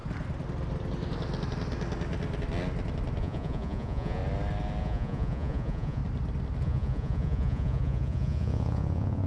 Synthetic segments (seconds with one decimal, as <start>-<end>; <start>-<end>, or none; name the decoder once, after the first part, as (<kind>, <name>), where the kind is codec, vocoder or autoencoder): 3.2-4.2 (vocoder, Vocos); 4.8-6.0; 6.6-9.3